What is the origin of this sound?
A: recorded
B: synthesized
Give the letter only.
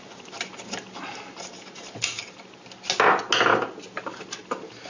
A